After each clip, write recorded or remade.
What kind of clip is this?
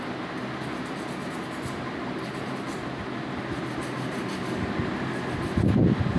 recorded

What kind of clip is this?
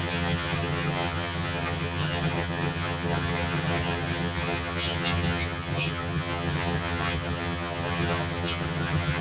remade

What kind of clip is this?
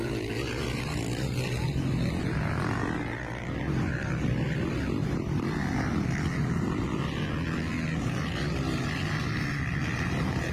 recorded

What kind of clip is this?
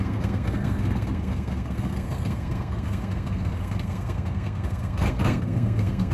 remade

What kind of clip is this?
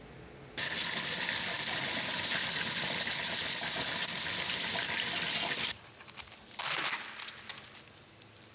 recorded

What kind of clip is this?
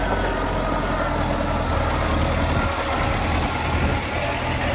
recorded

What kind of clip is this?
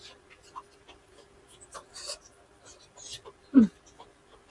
recorded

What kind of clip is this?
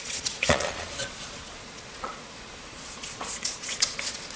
remade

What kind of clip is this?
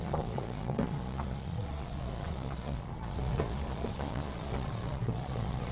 remade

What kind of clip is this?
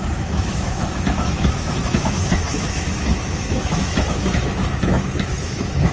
remade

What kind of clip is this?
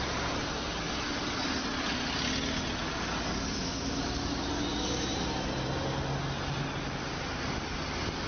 recorded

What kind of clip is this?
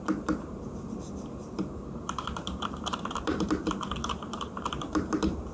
remade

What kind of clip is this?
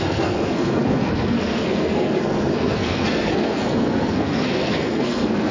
remade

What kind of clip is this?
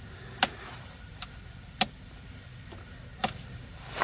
recorded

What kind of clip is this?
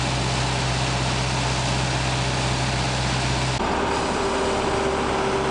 recorded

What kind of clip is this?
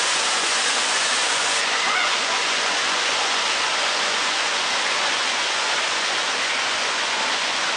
remade